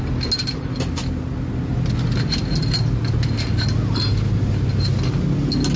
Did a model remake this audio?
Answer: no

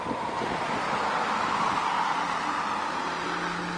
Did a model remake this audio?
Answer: no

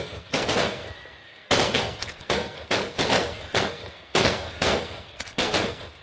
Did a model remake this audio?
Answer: yes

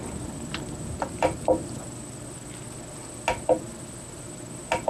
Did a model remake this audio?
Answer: no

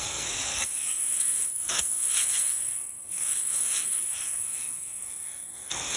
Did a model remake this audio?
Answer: yes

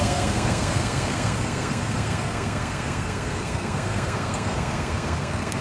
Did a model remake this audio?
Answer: yes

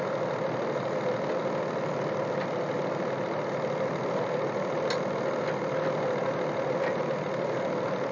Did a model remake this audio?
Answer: no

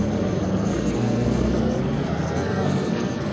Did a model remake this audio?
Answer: yes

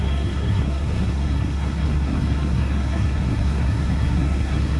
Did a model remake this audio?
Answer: yes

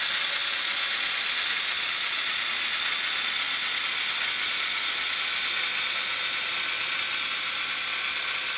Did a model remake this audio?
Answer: no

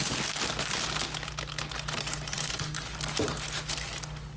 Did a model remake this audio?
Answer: no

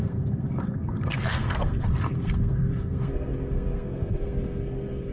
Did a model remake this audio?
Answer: yes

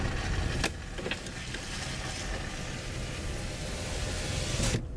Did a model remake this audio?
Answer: no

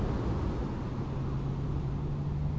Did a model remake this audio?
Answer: no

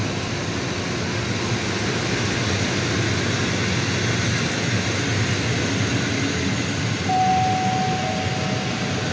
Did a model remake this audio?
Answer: no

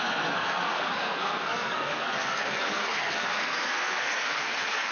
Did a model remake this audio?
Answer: yes